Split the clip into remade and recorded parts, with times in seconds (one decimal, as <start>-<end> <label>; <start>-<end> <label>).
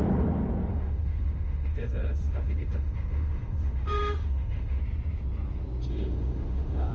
0.0-0.7 recorded; 0.7-4.8 remade; 4.8-5.9 recorded; 5.9-6.9 remade